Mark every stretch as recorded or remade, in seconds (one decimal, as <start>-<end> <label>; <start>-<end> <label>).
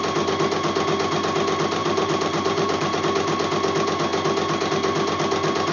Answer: 0.0-1.8 recorded; 1.8-3.0 remade; 3.0-5.7 recorded